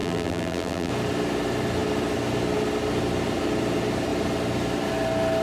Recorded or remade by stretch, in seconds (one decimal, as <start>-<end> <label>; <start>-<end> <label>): 0.0-0.9 remade; 0.9-5.4 recorded